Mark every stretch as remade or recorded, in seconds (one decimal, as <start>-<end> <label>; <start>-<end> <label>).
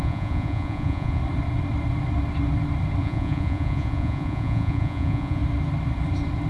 0.0-1.2 remade; 1.2-3.0 recorded; 3.0-5.4 remade; 5.4-6.5 recorded